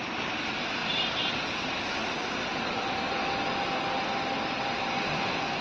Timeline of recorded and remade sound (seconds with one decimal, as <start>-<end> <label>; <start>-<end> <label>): 0.0-0.8 recorded; 0.8-1.3 remade; 1.3-2.0 recorded; 2.0-4.8 remade; 4.8-5.6 recorded